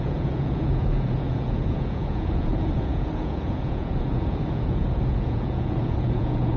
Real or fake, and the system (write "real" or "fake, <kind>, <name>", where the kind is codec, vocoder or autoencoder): fake, vocoder, Vocos